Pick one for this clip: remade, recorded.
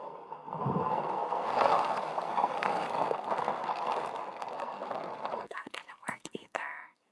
remade